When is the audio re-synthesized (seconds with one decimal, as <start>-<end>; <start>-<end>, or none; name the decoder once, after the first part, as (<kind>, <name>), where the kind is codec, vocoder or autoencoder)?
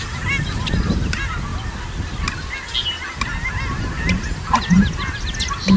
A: none